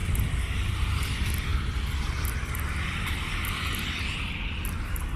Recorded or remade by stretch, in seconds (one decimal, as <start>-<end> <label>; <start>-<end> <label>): 0.0-5.2 recorded